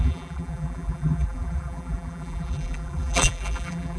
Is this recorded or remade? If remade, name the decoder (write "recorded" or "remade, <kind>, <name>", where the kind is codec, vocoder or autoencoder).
remade, vocoder, BigVGAN v2